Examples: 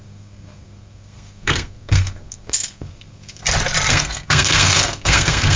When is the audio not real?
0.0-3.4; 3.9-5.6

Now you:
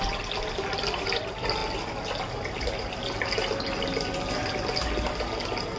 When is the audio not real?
none